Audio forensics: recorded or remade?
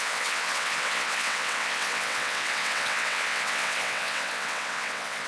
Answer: remade